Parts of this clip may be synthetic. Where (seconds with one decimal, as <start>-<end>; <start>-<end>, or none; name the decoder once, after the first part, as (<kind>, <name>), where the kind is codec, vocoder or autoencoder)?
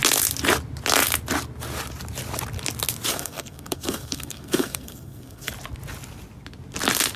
3.1-5.5 (codec, SNAC)